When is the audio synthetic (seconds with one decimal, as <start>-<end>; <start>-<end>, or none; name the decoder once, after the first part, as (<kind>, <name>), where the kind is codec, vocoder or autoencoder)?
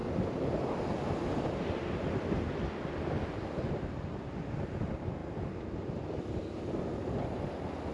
0.0-4.4 (vocoder, BigVGAN v2)